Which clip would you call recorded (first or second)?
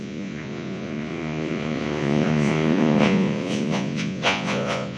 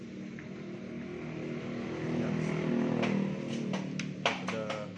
second